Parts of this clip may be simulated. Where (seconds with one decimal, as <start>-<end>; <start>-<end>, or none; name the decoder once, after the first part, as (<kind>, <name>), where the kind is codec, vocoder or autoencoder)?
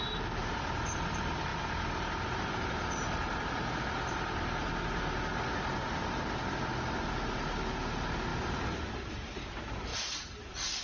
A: 8.3-9.1 (vocoder, BigVGAN v2); 9.9-10.8